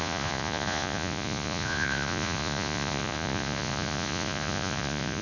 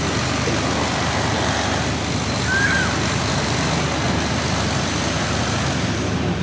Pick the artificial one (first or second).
first